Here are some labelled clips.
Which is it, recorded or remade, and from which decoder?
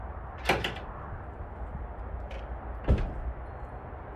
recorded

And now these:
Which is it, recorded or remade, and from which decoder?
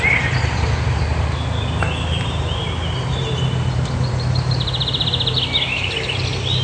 remade, vocoder, BigVGAN v2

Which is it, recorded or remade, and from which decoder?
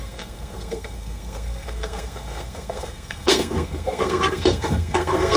remade, codec, SNAC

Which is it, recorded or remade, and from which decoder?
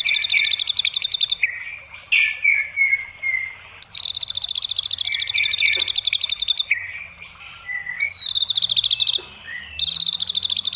recorded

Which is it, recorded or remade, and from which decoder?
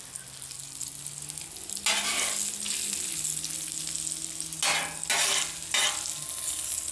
recorded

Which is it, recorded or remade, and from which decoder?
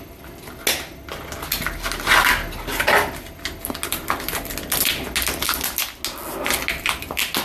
recorded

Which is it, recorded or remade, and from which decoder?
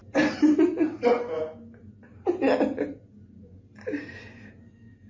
recorded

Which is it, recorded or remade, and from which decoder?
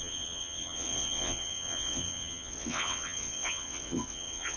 remade, vocoder, WaveNeXt